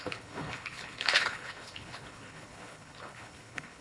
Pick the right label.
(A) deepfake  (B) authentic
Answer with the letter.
A